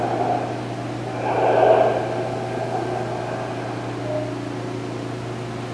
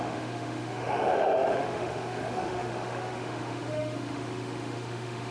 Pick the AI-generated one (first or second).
second